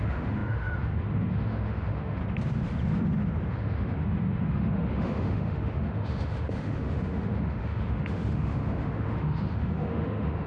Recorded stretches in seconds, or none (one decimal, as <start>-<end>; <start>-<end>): 2.2-3.5